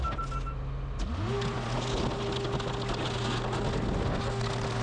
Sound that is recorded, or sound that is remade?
recorded